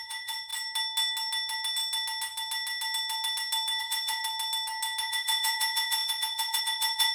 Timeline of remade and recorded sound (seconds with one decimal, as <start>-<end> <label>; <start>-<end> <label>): 0.0-0.5 remade; 0.5-3.8 recorded; 3.8-4.2 remade; 4.2-5.0 recorded; 5.0-7.1 remade